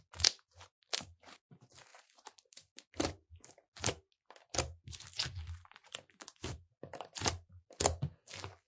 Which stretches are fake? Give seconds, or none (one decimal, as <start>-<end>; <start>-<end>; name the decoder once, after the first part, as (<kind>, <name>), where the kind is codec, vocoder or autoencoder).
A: 1.9-2.9 (vocoder, BigVGAN v2); 5.8-7.6